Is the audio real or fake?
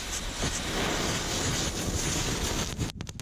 real